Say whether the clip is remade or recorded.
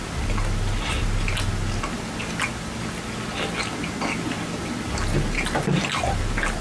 recorded